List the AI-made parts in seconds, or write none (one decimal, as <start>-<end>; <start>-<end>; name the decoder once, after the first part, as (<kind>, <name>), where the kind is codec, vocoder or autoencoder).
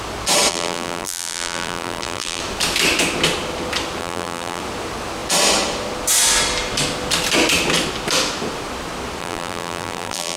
0.5-2.4 (vocoder, BigVGAN v2); 4.0-4.6; 9.2-10.4